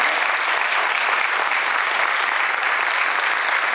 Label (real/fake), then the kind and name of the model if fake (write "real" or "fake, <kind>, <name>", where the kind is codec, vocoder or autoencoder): real